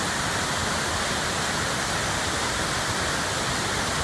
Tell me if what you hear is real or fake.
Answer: real